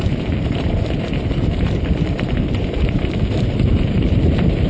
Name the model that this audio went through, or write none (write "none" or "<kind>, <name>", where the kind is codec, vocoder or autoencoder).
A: vocoder, BigVGAN v2